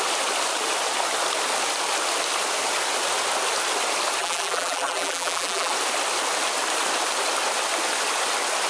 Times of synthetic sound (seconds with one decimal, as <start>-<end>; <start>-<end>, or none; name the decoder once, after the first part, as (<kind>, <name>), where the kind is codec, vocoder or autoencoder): 4.2-5.7 (vocoder, BigVGAN v2)